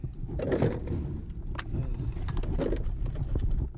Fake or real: real